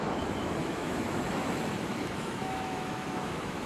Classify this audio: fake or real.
fake